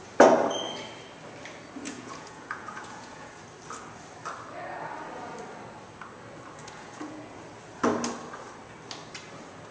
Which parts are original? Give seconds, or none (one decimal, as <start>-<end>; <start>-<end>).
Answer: 0.0-1.8; 3.4-6.6; 7.4-9.7